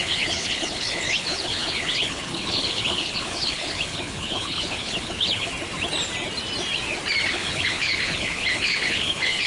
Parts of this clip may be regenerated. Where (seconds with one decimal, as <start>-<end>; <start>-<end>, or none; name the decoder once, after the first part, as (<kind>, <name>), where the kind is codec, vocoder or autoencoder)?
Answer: 0.0-5.5 (codec, HILCodec); 7.3-9.5